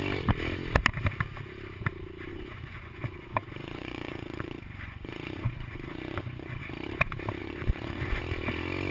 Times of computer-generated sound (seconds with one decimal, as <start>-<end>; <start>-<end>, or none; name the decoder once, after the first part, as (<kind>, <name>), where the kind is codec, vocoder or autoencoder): 2.3-6.6 (vocoder, Vocos); 7.4-8.2